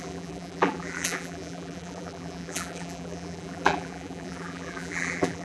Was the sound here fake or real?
fake